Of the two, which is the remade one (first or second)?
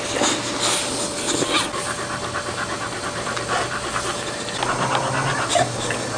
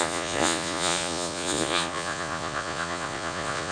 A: second